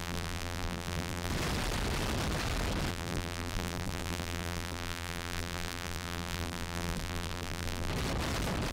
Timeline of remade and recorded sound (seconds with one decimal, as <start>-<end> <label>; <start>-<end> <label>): 0.0-1.3 remade; 1.3-2.9 recorded; 2.9-7.9 remade; 7.9-8.7 recorded